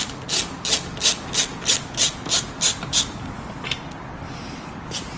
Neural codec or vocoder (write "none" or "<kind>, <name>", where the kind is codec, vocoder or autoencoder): none